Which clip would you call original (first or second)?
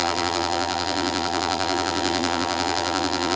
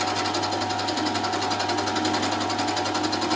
second